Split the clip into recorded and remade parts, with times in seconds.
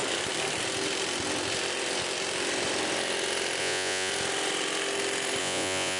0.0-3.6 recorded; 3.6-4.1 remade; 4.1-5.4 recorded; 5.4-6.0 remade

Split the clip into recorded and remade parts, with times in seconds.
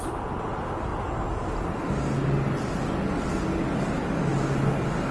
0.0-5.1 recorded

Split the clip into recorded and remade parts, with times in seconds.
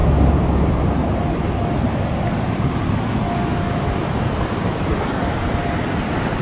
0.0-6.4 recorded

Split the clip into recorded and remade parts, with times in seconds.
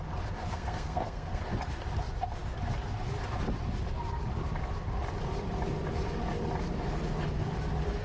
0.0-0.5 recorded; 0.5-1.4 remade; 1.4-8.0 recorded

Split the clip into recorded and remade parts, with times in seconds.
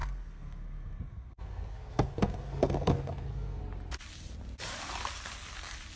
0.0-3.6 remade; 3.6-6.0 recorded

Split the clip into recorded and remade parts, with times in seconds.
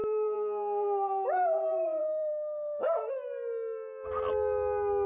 0.0-3.1 remade; 3.1-5.1 recorded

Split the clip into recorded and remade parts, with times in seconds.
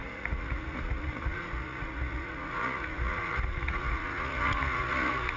0.0-5.4 remade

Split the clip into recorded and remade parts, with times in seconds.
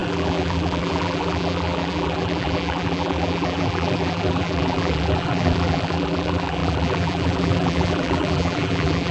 0.0-9.1 remade